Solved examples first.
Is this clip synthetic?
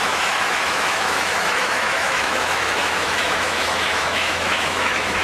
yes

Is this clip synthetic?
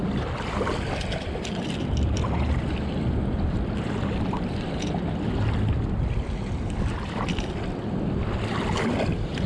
no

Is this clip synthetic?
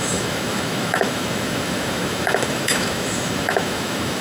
yes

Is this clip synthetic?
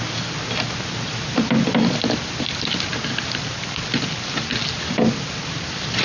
no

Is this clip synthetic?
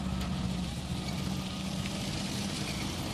no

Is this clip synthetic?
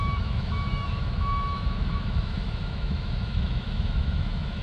yes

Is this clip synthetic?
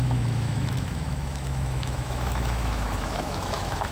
yes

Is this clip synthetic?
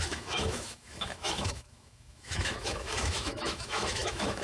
yes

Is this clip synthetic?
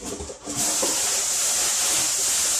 no